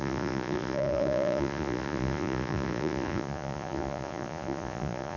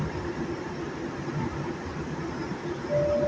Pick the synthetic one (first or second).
first